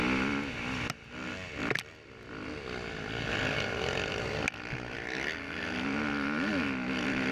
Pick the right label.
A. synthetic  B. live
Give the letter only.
B